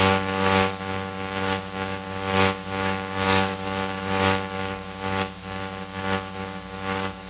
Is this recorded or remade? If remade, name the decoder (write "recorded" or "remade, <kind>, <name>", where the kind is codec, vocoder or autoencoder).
remade, codec, DAC